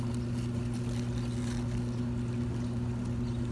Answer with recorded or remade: recorded